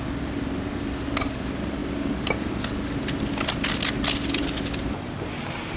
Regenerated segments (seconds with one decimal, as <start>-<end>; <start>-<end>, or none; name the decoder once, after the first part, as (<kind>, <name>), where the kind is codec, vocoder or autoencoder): none